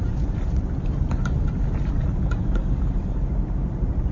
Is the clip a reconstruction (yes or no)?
yes